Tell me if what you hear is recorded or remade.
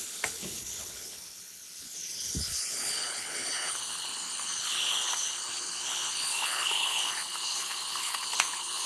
remade